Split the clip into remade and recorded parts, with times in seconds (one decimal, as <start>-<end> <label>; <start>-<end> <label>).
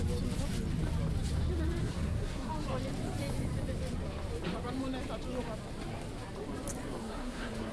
0.0-1.8 recorded; 1.8-2.5 remade; 2.5-7.0 recorded; 7.0-7.7 remade